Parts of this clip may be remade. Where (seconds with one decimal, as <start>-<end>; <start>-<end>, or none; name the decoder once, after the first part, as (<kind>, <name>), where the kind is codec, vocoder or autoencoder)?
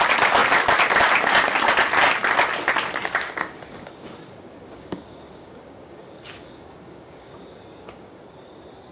3.0-8.2 (codec, DAC)